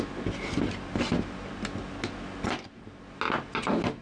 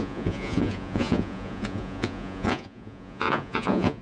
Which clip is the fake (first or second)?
second